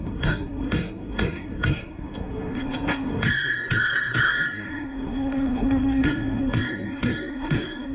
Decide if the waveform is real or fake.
fake